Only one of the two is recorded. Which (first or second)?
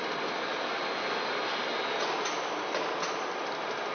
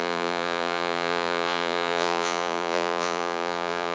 first